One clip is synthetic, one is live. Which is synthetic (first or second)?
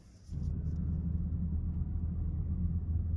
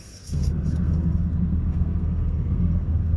second